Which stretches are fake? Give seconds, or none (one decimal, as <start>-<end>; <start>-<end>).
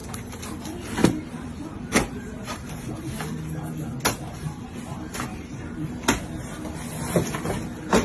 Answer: 0.0-0.6; 1.0-3.0; 5.3-6.0